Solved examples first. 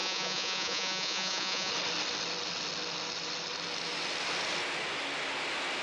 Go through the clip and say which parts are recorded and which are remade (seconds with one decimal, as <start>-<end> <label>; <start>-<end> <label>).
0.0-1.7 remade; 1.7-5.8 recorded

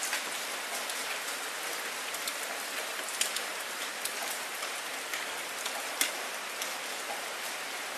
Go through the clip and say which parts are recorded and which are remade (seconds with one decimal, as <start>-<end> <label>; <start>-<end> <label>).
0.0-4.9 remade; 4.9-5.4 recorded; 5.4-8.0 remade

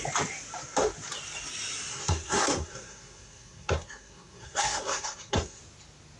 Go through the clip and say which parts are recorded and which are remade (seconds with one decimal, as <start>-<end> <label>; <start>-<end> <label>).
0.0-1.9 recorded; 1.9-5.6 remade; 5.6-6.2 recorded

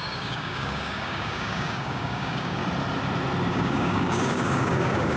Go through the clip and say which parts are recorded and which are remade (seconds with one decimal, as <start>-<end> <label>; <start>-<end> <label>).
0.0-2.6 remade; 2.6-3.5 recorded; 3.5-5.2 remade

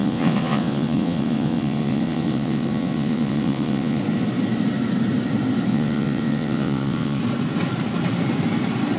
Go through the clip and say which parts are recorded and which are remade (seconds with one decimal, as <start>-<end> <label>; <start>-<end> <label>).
0.0-4.0 remade; 4.0-5.7 recorded; 5.7-7.2 remade; 7.2-9.0 recorded

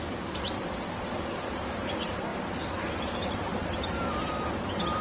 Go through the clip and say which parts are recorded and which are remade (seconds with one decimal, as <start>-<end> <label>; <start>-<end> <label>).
0.0-5.0 recorded

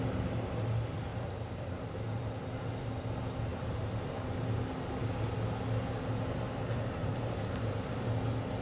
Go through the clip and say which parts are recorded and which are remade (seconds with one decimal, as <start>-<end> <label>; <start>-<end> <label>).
0.0-1.1 recorded; 1.1-2.3 remade; 2.3-7.0 recorded; 7.0-7.9 remade; 7.9-8.6 recorded